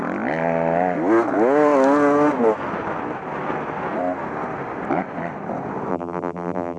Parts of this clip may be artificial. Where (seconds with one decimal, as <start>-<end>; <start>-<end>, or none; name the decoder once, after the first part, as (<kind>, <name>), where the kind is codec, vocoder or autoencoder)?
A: 5.9-6.8 (vocoder, BigVGAN v2)